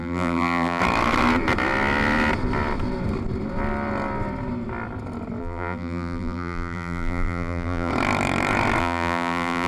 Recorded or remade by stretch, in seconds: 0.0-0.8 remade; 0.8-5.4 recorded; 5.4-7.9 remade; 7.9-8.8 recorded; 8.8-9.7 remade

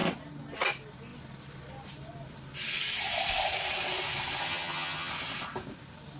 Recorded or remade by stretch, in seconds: 0.0-4.4 recorded; 4.4-5.1 remade; 5.1-6.2 recorded

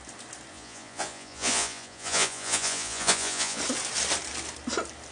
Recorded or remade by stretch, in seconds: 0.0-0.5 recorded; 0.5-3.6 remade; 3.6-5.1 recorded

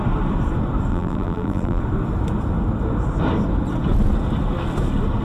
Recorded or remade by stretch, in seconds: 0.0-0.9 recorded; 0.9-1.8 remade; 1.8-5.2 recorded

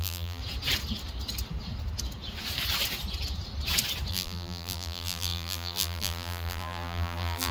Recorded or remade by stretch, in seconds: 0.0-0.4 remade; 0.4-4.1 recorded; 4.1-7.5 remade